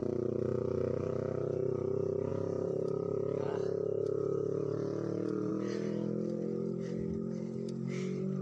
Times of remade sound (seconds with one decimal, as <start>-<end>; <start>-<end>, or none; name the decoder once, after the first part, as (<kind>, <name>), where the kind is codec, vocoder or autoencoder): none